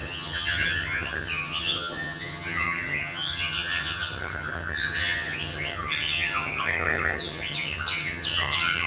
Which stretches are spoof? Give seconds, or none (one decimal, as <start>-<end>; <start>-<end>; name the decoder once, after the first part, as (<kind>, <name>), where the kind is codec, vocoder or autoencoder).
0.0-8.9 (vocoder, HiFi-GAN)

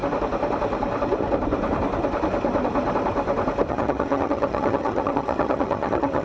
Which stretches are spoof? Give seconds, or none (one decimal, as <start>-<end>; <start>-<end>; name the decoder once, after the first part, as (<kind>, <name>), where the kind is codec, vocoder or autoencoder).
3.7-6.2 (vocoder, HiFi-GAN)

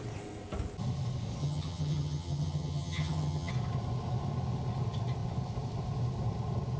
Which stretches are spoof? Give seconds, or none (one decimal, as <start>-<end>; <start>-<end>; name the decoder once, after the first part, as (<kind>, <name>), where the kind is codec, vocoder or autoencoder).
1.4-3.5 (vocoder, HiFi-GAN)

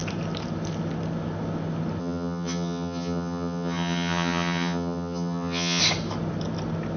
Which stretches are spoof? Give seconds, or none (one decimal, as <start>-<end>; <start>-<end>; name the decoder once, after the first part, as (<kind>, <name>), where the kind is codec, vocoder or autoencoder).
2.0-5.8 (vocoder, HiFi-GAN)

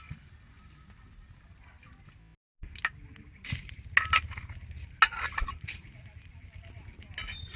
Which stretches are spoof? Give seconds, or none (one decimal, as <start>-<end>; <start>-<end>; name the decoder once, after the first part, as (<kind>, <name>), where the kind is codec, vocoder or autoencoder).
none